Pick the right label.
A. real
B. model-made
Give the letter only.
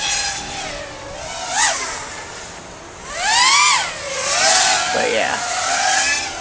A